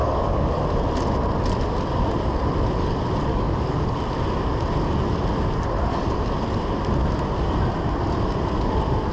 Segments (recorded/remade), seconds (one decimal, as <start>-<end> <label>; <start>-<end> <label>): 0.0-0.6 remade; 0.6-3.3 recorded; 3.3-4.0 remade; 4.0-9.1 recorded